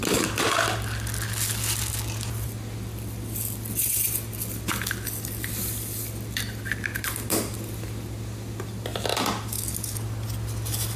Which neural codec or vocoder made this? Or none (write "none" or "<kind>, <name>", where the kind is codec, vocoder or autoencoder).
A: none